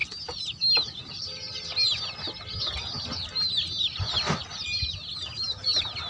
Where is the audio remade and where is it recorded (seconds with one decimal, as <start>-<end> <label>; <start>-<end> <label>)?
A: 0.0-6.1 recorded